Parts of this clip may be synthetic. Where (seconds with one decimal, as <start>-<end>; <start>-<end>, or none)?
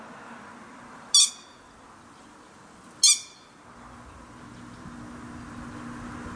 none